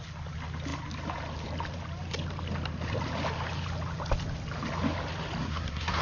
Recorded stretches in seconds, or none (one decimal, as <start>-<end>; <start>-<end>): 0.0-5.4

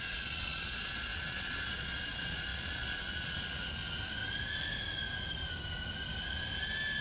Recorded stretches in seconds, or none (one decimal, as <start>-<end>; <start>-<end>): 3.8-7.0

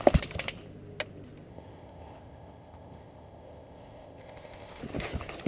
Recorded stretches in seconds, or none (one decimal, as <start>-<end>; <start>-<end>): 0.0-1.5; 4.8-5.5

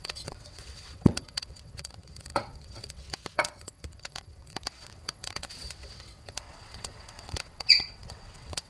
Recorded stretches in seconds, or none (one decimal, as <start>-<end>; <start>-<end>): none

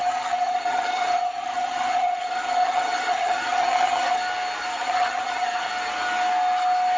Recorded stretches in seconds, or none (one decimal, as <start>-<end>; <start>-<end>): 4.2-4.7; 5.7-7.0

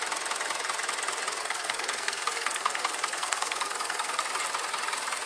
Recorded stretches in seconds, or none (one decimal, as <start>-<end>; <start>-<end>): 0.0-1.4; 4.2-5.3